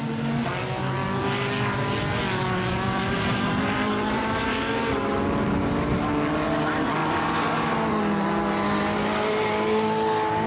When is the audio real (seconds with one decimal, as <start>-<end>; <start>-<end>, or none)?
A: 0.0-2.7; 4.8-7.0; 8.0-10.5